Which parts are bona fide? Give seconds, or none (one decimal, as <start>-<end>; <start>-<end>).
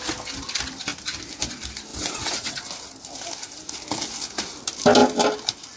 0.0-1.9; 2.6-5.8